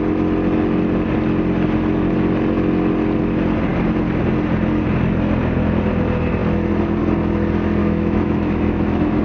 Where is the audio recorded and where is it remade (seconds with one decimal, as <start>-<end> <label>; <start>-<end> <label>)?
0.0-7.8 recorded; 7.8-9.2 remade